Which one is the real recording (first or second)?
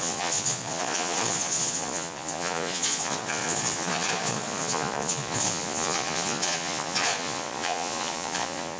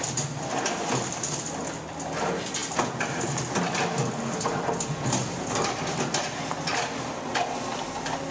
second